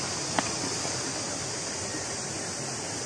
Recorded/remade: recorded